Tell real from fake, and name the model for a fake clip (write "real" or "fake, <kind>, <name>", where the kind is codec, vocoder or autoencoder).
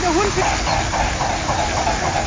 real